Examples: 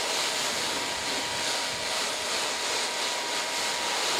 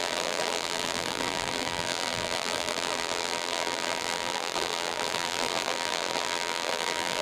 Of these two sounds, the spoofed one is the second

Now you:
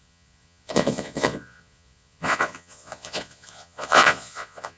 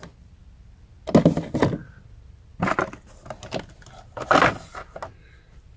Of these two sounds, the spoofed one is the first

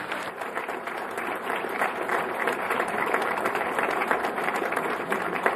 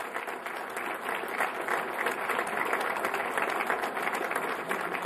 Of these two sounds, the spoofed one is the first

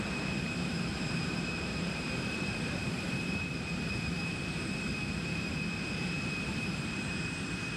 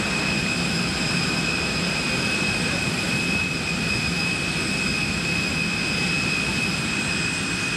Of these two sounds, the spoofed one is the first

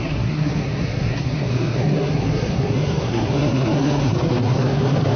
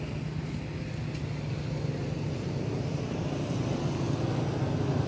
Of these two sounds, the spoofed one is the first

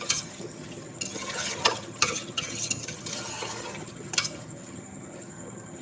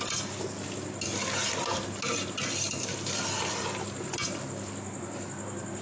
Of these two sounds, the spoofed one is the first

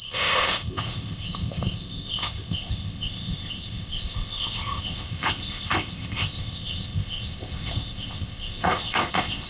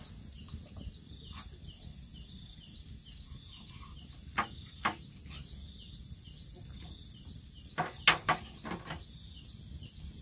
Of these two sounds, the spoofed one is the first